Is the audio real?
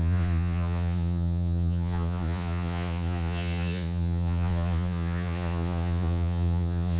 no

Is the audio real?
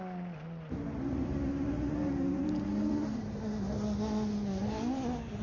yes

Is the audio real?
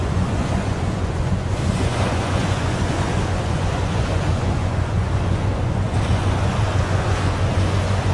no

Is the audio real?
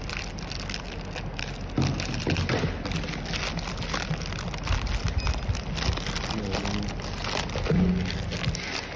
yes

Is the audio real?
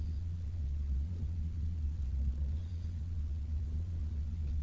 no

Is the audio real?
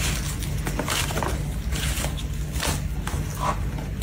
yes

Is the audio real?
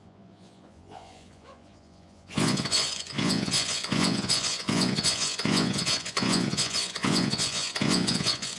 no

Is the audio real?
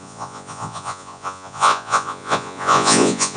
no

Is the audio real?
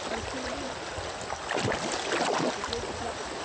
yes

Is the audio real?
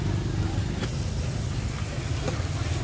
yes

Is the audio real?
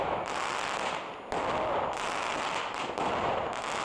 yes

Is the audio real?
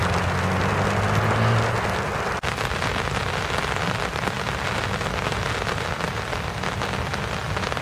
yes